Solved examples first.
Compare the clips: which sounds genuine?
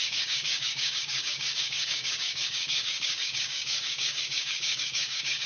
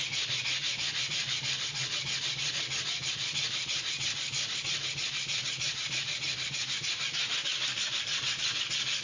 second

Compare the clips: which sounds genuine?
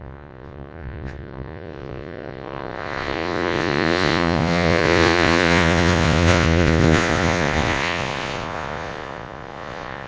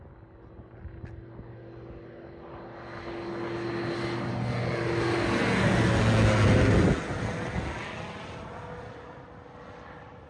second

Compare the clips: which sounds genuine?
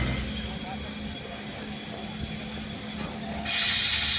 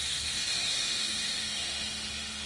first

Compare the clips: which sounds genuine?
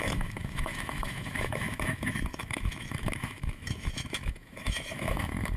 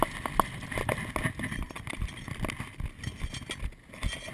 second